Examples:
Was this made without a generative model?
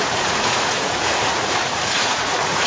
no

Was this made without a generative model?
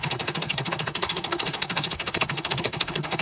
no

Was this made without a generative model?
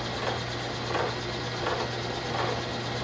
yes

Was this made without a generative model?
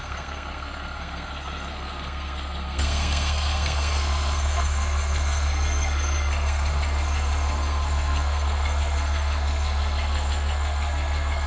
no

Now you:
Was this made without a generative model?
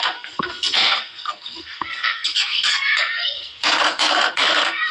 no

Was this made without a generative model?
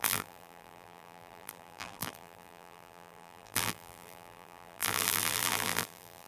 no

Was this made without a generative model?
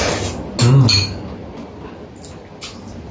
yes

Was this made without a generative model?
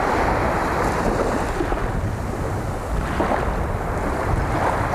yes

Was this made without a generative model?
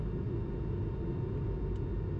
yes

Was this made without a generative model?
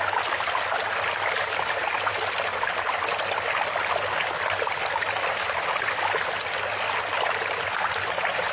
yes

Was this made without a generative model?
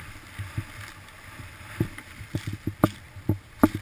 no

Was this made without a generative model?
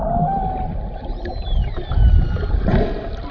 yes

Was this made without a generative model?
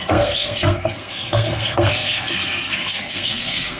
no